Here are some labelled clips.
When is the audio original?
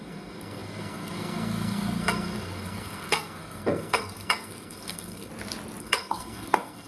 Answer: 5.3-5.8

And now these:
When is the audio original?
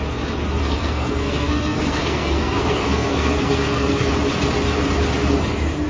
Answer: 0.0-0.6; 4.1-5.9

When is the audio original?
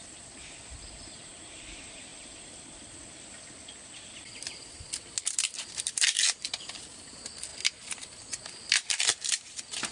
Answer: 7.5-8.4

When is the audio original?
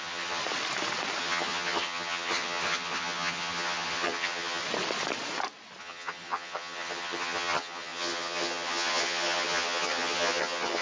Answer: 0.4-1.2; 4.6-5.8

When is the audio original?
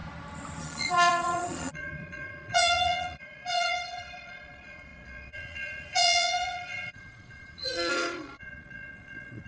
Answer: 0.0-0.6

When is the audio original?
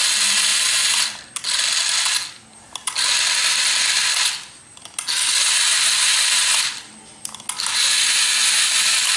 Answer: 0.0-9.2